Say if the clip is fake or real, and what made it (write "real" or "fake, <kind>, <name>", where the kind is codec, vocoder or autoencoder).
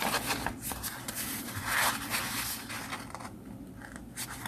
real